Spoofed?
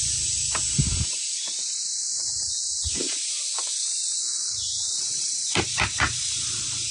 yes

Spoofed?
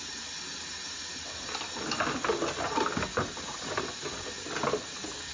no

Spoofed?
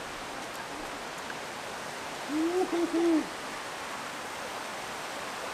no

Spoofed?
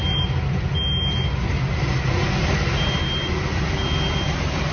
no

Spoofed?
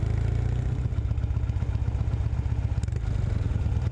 no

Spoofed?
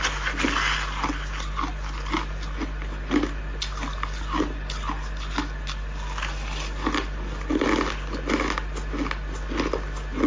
no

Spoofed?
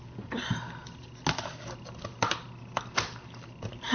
no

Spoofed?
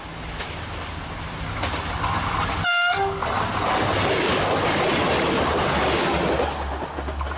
no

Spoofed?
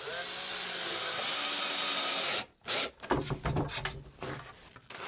no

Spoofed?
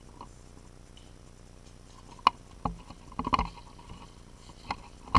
no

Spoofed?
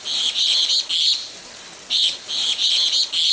no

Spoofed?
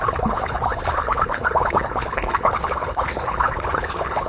yes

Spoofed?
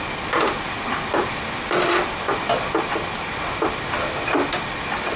no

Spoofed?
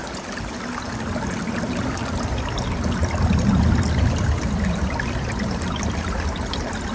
no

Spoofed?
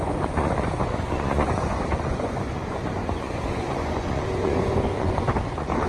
yes